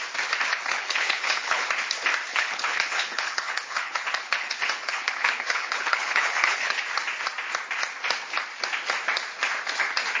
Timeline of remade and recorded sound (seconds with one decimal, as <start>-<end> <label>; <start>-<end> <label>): 0.0-0.5 recorded; 0.5-1.7 remade; 1.7-2.3 recorded; 2.3-6.8 remade; 6.8-10.2 recorded